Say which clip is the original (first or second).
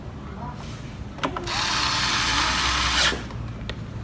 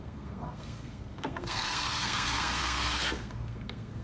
first